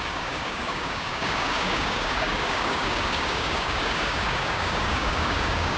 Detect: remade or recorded remade